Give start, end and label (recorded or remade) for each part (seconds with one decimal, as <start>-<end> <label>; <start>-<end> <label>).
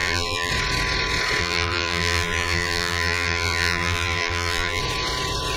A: 0.0-0.5 remade; 0.5-1.4 recorded; 1.4-4.8 remade; 4.8-5.6 recorded